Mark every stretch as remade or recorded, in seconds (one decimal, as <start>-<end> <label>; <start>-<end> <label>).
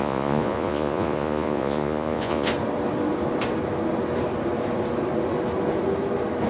0.0-2.5 remade; 2.5-6.5 recorded